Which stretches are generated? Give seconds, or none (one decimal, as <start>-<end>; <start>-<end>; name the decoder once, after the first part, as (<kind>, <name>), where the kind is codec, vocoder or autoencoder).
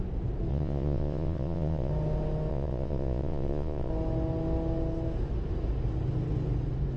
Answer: 0.5-1.9 (vocoder, Vocos); 2.5-3.9